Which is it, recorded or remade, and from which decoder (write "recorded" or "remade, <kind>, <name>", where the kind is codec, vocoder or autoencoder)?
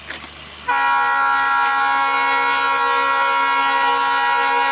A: recorded